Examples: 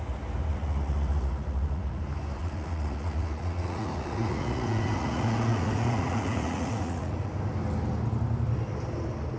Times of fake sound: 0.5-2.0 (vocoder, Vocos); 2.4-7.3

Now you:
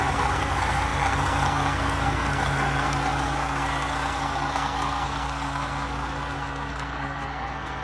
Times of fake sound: 0.0-7.8 (codec, SNAC)

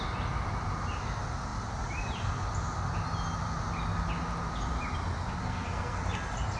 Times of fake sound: 5.4-6.0 (codec, SNAC)

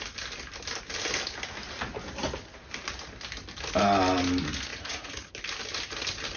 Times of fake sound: 4.7-5.3 (vocoder, Vocos)